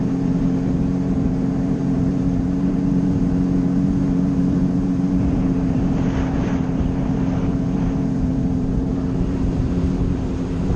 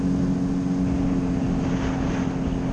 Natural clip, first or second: second